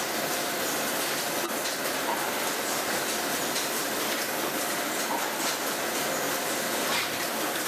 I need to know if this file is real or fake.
real